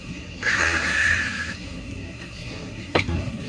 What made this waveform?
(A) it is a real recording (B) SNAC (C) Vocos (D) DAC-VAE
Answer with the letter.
B